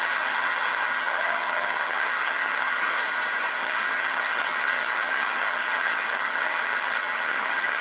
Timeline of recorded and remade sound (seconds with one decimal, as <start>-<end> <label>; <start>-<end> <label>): 0.0-3.0 remade; 3.0-3.6 recorded; 3.6-7.8 remade